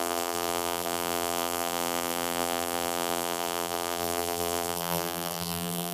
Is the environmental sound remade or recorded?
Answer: remade